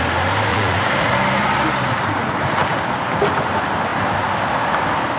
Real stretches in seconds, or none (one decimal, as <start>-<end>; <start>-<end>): 0.0-0.5; 1.1-5.2